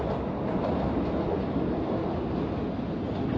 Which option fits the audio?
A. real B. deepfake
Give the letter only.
A